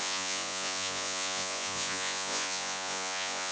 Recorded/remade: remade